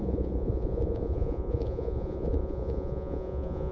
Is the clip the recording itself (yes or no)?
no